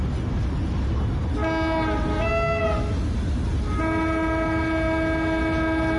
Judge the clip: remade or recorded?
recorded